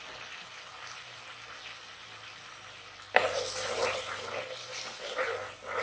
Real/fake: real